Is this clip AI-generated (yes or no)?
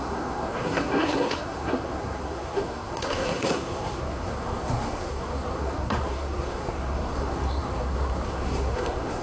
yes